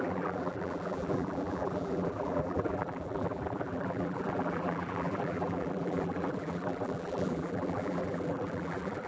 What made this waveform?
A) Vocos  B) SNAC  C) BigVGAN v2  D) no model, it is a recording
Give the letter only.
C